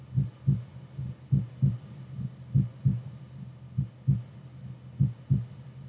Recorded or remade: recorded